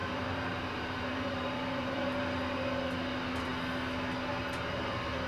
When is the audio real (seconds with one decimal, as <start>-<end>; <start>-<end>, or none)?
2.0-5.3